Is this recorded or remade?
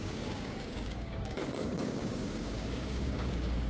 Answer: remade